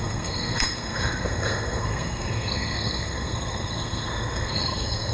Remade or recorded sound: remade